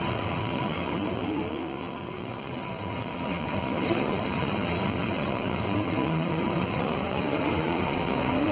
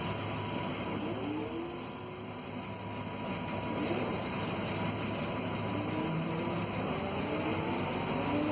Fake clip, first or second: first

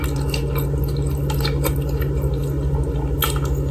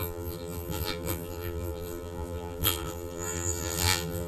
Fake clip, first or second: second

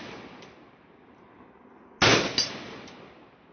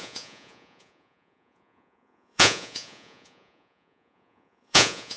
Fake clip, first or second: second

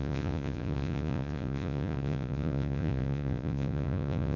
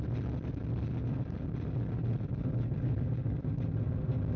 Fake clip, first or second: first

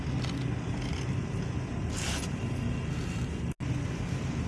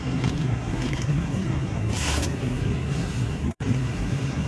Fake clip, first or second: second